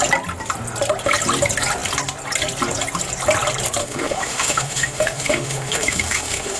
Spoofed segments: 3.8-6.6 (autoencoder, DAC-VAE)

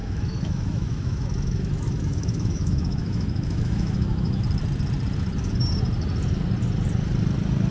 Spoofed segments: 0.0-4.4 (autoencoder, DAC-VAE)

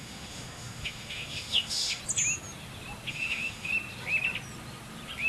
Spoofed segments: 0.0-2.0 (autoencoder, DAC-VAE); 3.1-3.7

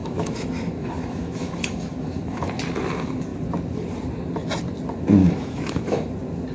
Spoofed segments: 0.0-2.5 (autoencoder, DAC-VAE); 5.2-6.1

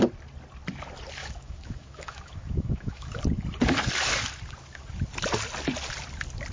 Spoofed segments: 1.2-3.2 (autoencoder, DAC-VAE)